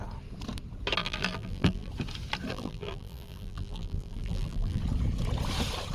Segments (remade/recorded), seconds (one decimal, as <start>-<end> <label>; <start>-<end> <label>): 0.0-1.0 recorded; 1.0-1.9 remade; 1.9-2.5 recorded; 2.5-4.8 remade; 4.8-5.9 recorded